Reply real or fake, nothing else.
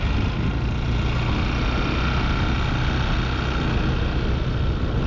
real